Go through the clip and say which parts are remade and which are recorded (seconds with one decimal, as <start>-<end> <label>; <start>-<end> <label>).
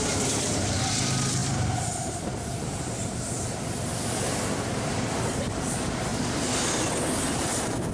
0.0-6.1 remade; 6.1-7.3 recorded; 7.3-7.9 remade